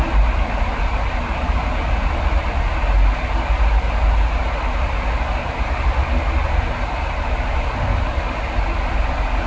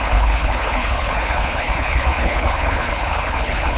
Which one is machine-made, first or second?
second